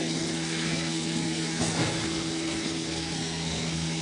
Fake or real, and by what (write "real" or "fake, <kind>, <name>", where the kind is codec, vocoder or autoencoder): fake, codec, SNAC